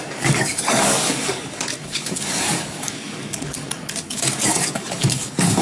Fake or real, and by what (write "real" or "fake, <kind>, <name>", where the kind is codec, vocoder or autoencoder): fake, codec, DAC